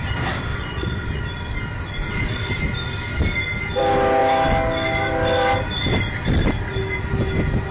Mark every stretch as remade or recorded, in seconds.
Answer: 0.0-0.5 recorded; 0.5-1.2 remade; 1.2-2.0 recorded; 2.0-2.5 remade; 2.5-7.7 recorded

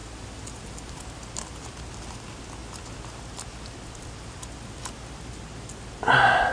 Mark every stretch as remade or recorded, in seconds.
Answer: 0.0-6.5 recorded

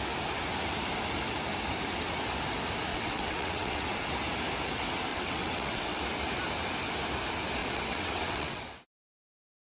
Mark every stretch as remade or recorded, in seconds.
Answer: 0.0-2.9 recorded; 2.9-3.8 remade; 3.8-5.1 recorded; 5.1-6.0 remade; 6.0-7.6 recorded; 7.6-8.6 remade; 8.6-9.7 recorded

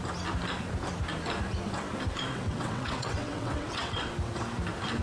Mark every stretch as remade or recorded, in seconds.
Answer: 0.0-2.3 recorded; 2.3-4.1 remade; 4.1-5.0 recorded

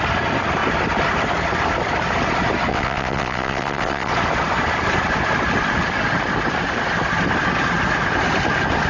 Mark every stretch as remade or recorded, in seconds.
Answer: 0.0-2.7 recorded; 2.7-4.1 remade; 4.1-8.9 recorded

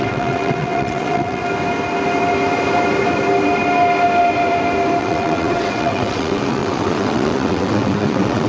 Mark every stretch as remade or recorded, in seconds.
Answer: 0.0-1.4 remade; 1.4-5.0 recorded; 5.0-8.5 remade

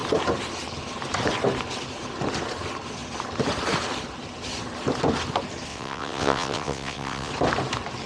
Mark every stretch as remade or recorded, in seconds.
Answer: 0.0-5.7 recorded; 5.7-7.3 remade; 7.3-8.1 recorded